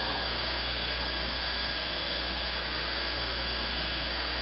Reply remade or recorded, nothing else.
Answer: remade